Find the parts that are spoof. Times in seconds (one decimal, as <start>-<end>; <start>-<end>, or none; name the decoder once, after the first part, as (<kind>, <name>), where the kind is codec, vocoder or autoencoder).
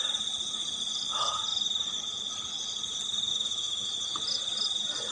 3.3-3.9 (autoencoder, DAC-VAE)